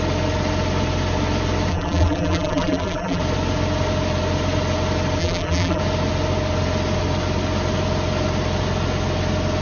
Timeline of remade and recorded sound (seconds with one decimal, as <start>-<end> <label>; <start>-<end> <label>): 0.0-1.7 recorded; 1.7-3.2 remade; 3.2-5.2 recorded; 5.2-5.8 remade; 5.8-9.6 recorded